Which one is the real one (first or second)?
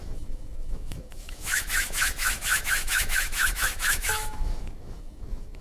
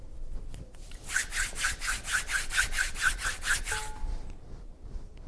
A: second